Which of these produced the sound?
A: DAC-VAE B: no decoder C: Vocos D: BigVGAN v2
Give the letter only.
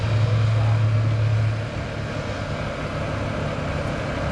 B